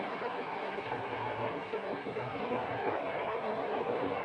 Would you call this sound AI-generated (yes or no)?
yes